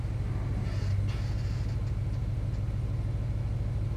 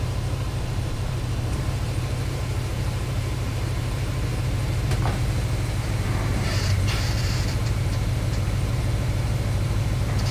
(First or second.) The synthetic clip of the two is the second